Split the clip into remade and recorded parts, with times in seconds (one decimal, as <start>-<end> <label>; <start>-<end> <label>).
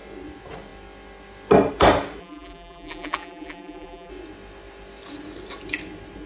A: 0.0-2.2 recorded; 2.2-4.1 remade; 4.1-6.3 recorded